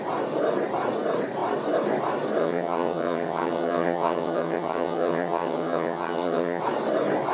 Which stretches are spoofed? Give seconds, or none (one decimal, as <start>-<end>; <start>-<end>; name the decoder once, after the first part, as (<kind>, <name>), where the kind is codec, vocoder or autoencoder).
2.4-6.6 (vocoder, HiFi-GAN)